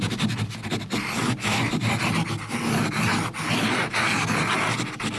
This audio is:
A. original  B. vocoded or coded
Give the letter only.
A